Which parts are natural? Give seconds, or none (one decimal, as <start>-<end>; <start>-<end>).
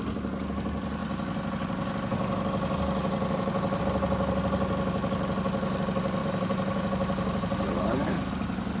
0.0-6.2; 8.3-8.8